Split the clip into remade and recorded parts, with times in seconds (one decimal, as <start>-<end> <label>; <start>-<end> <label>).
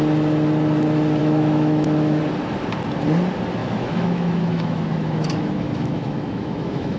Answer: 0.0-1.2 recorded; 1.2-2.2 remade; 2.2-3.6 recorded; 3.6-7.0 remade